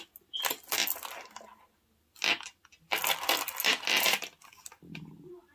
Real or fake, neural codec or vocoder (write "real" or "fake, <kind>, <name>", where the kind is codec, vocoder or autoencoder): real